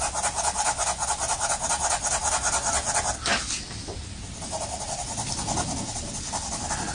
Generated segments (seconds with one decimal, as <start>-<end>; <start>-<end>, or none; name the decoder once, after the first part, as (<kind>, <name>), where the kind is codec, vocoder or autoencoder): none